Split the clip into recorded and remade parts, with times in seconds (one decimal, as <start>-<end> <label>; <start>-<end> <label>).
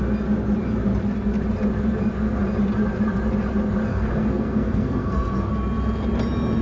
0.0-3.9 recorded; 3.9-5.5 remade; 5.5-6.6 recorded